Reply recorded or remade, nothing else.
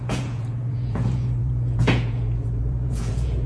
remade